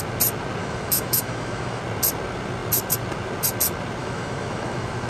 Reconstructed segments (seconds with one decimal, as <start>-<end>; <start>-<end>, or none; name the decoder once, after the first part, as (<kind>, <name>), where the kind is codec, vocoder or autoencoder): 0.6-1.8 (autoencoder, DAC-VAE); 4.0-5.1